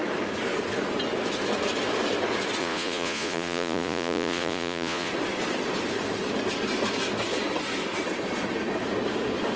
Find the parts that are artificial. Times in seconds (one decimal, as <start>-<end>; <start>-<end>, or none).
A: 2.6-5.1

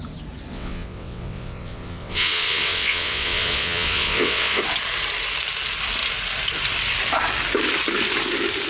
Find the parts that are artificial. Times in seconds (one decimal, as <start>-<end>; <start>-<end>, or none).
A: 0.5-4.6

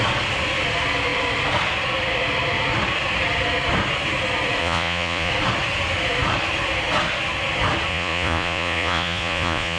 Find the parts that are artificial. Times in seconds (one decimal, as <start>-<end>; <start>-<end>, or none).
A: 4.6-5.3; 7.9-9.8

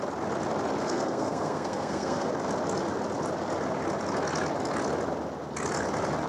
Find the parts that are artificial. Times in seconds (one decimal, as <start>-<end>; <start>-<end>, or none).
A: 0.8-2.3

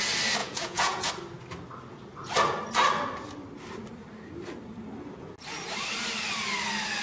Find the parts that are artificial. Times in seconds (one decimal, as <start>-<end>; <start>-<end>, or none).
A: 0.4-1.1

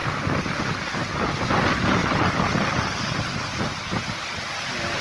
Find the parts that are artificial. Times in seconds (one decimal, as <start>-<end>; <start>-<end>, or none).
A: 0.7-2.0; 4.5-5.0

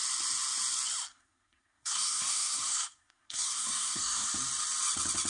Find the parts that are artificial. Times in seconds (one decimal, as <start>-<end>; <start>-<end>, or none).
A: 1.1-4.3